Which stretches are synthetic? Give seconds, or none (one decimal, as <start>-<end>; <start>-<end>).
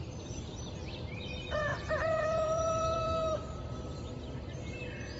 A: 1.7-4.1